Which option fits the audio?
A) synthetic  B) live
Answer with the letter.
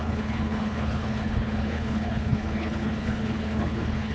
A